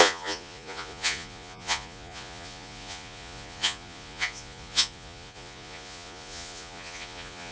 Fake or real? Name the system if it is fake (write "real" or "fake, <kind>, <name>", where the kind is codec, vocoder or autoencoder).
fake, vocoder, Vocos